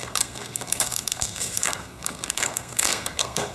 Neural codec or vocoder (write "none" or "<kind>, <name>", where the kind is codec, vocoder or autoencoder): codec, SNAC